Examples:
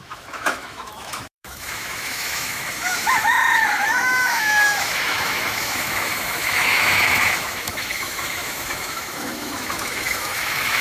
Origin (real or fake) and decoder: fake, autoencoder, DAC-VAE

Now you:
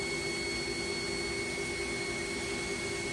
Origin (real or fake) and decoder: real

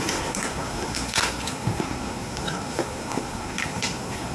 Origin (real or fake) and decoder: fake, codec, SNAC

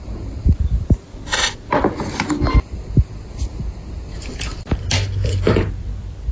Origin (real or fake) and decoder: fake, vocoder, BigVGAN v2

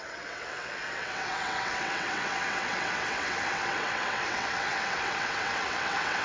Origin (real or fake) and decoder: fake, vocoder, WaveNeXt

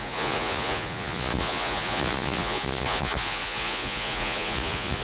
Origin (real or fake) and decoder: fake, vocoder, Vocos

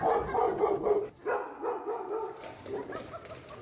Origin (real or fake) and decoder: real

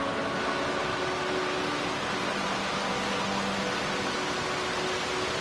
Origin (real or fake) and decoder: real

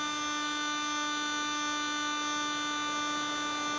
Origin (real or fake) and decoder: real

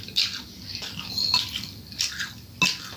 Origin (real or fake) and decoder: real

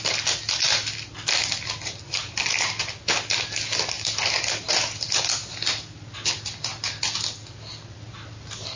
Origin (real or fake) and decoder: real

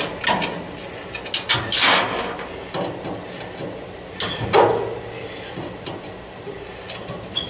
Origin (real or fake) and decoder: real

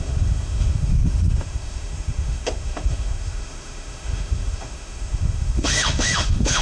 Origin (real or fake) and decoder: fake, autoencoder, DAC-VAE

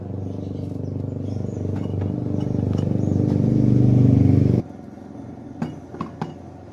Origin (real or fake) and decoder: real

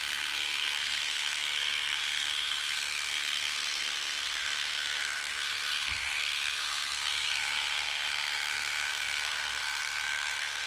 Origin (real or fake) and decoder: fake, codec, SNAC